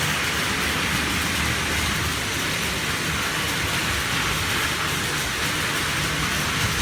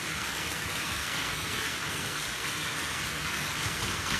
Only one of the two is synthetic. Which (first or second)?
second